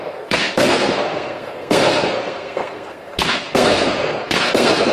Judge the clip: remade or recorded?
remade